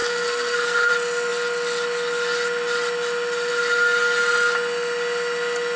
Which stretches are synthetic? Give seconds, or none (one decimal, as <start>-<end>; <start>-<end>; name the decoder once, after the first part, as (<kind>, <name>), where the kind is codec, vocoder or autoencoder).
0.0-0.9 (codec, SNAC)